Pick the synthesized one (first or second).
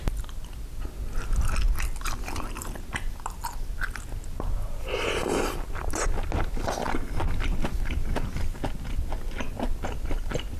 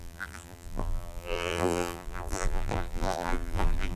second